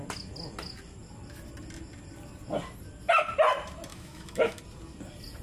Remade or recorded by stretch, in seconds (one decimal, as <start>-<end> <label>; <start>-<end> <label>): 0.0-3.9 recorded; 3.9-4.6 remade; 4.6-5.4 recorded